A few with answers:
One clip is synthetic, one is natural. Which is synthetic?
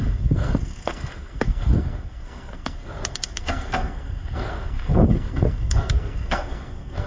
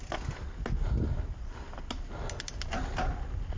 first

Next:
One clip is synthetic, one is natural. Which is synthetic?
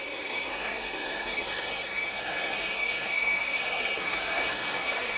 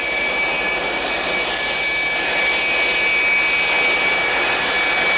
first